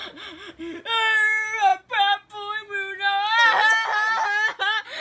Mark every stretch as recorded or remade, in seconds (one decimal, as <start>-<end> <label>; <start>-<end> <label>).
0.0-0.6 remade; 0.6-5.0 recorded